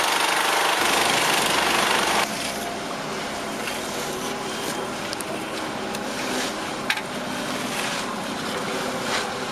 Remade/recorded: recorded